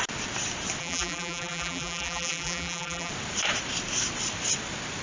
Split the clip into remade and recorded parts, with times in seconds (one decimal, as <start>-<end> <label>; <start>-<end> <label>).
0.0-0.8 recorded; 0.8-3.1 remade; 3.1-5.0 recorded